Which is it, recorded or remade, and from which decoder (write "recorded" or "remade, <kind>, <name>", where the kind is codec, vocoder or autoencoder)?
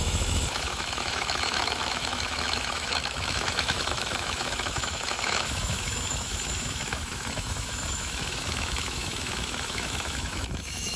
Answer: remade, autoencoder, DAC-VAE